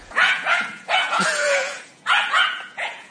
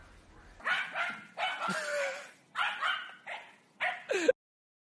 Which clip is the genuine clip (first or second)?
second